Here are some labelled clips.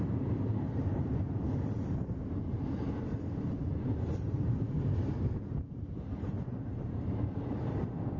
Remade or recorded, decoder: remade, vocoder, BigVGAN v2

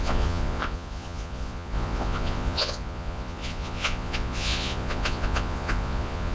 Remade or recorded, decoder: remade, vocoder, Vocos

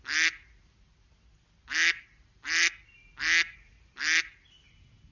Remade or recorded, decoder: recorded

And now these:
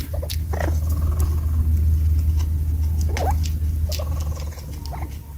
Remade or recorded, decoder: recorded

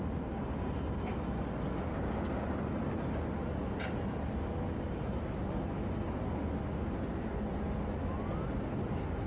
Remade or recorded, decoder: recorded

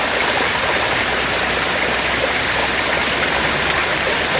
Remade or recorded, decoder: recorded